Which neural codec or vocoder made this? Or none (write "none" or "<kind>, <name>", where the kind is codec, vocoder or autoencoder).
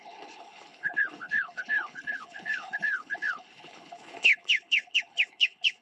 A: codec, HILCodec